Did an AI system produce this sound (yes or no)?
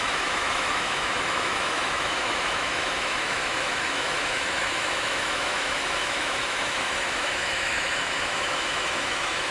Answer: yes